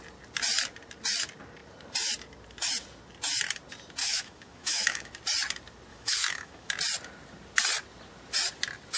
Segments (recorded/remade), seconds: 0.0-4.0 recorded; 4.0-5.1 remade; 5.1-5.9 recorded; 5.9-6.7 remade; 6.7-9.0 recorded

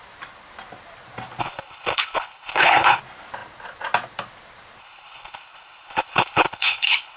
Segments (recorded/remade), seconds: 0.0-1.4 recorded; 1.4-3.0 remade; 3.0-4.8 recorded; 4.8-7.2 remade

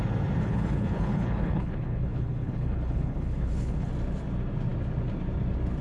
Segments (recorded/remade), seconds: 0.0-0.4 recorded; 0.4-3.9 remade; 3.9-5.8 recorded

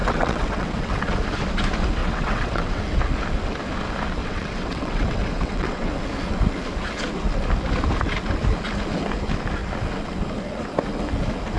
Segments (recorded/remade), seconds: 0.0-1.0 remade; 1.0-2.0 recorded; 2.0-2.8 remade; 2.8-4.2 recorded; 4.2-5.9 remade; 5.9-11.6 recorded